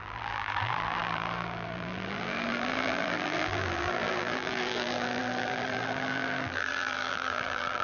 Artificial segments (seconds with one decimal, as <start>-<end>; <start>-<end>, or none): 0.0-7.8